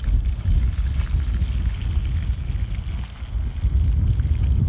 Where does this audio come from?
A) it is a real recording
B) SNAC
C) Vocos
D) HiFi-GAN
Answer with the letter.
A